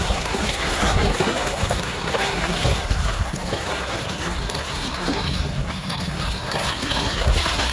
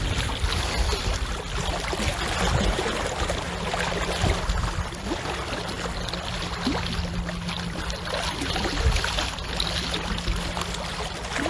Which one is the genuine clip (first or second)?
second